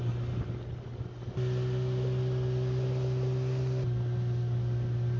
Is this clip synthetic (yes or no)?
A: no